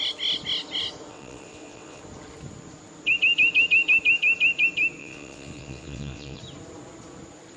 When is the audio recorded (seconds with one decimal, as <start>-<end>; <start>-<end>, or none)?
0.0-1.1; 2.0-5.0; 6.4-7.6